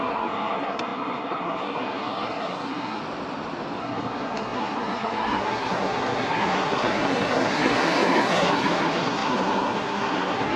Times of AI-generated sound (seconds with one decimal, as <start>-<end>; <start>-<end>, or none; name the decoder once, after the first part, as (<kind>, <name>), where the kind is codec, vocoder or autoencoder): 0.0-3.0 (codec, SNAC); 3.8-10.6